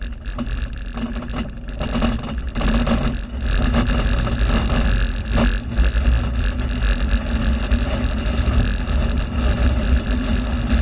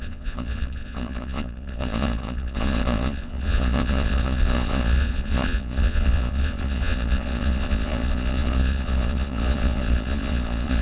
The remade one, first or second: second